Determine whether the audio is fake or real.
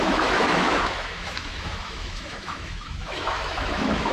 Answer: fake